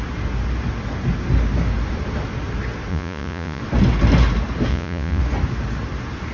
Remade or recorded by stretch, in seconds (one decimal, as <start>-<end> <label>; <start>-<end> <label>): 0.0-2.9 recorded; 2.9-3.6 remade; 3.6-4.7 recorded; 4.7-5.2 remade; 5.2-6.3 recorded